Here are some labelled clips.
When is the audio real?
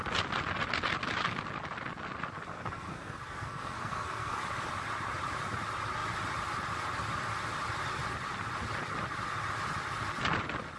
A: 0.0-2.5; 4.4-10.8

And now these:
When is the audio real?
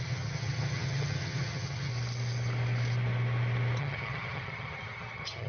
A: 1.9-3.8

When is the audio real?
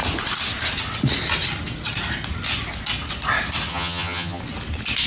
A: 0.0-3.7; 4.4-5.1